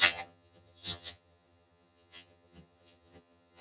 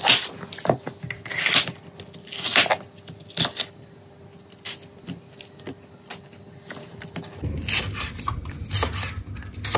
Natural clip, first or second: second